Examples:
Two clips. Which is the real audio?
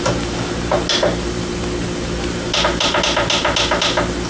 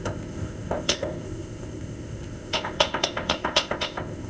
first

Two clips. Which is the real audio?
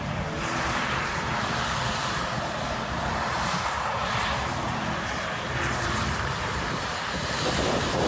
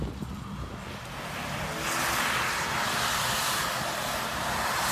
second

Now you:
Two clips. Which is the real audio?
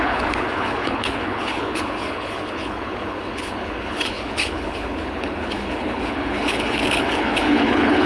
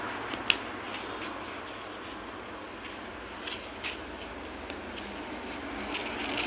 second